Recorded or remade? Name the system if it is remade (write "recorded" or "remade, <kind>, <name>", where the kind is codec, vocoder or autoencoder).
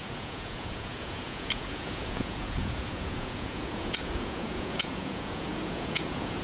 remade, vocoder, Vocos